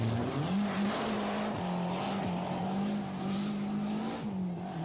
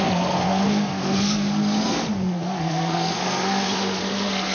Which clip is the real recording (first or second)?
first